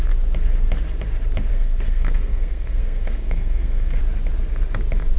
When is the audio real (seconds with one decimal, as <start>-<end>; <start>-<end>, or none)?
0.0-1.5; 4.0-5.2